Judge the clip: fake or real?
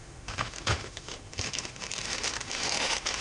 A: fake